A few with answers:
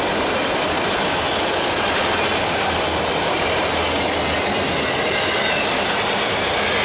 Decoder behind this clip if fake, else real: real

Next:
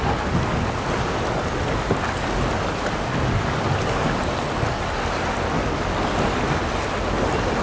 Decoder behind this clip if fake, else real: real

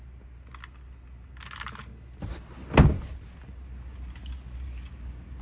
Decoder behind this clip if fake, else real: real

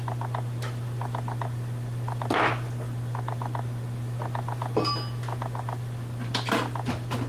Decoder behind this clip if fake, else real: real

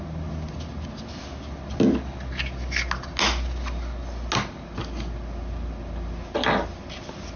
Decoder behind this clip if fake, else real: real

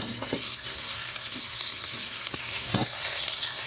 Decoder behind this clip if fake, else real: fake, codec, SNAC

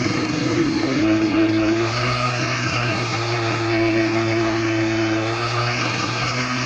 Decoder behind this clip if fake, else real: fake, codec, SNAC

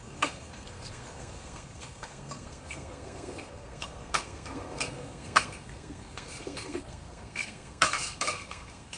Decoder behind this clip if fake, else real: fake, codec, SNAC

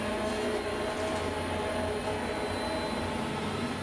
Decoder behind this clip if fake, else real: real